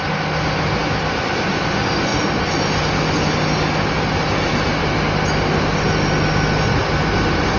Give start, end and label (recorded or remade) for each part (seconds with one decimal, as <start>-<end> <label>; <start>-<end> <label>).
0.0-7.6 recorded